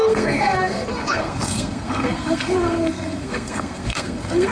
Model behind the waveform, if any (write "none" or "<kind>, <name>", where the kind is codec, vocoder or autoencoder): codec, SNAC